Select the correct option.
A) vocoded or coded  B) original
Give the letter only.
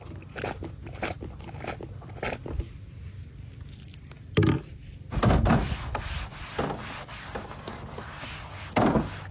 B